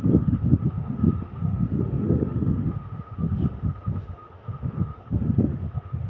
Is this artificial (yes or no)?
yes